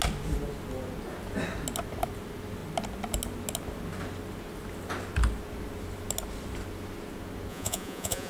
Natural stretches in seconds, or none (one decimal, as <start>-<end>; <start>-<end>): 0.0-7.5